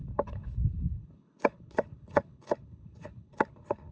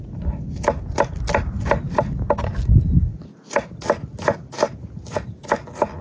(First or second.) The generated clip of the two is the first